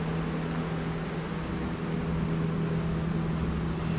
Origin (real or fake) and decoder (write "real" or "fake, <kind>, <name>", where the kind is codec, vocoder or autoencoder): real